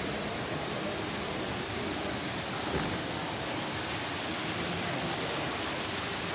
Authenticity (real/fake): real